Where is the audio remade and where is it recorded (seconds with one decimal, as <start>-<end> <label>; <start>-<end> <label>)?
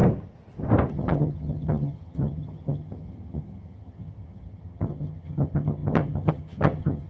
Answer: 0.0-0.9 recorded; 0.9-7.1 remade